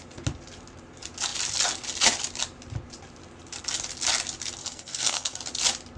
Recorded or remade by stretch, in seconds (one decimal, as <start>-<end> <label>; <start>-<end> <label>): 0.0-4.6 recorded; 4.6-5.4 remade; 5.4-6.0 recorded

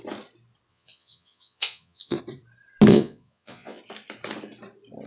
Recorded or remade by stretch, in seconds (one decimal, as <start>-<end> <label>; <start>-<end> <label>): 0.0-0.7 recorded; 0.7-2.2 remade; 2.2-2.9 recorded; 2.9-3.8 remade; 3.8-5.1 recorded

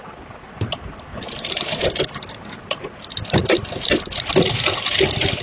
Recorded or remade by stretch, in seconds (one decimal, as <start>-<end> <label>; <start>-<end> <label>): 0.0-1.1 recorded; 1.1-2.0 remade; 2.0-3.4 recorded; 3.4-5.0 remade; 5.0-5.4 recorded

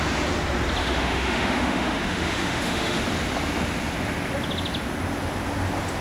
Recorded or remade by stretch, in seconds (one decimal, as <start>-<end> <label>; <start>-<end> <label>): 0.0-0.8 recorded; 0.8-3.0 remade; 3.0-6.0 recorded

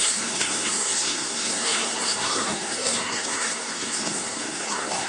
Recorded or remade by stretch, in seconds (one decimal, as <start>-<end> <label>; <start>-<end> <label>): 0.0-5.1 remade